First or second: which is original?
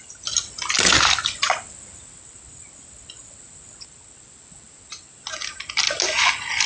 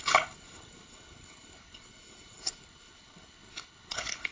first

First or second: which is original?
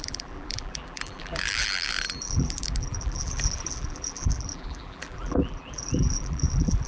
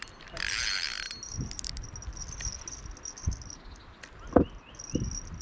second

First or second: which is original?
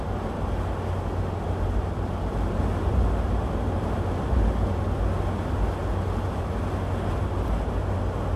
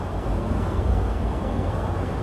first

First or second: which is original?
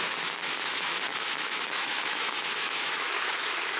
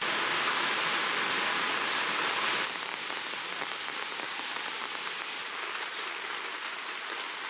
second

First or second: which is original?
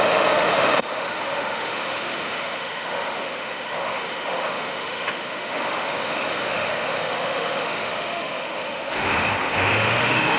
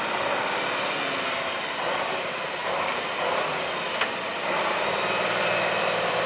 second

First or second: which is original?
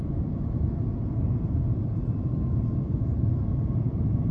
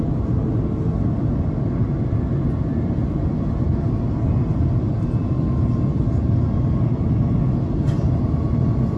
second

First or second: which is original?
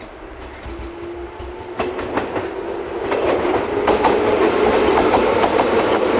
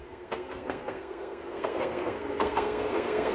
first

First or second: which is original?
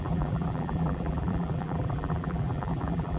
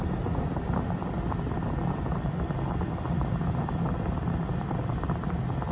second